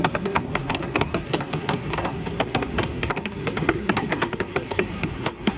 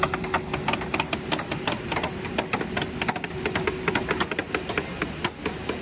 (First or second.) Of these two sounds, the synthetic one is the first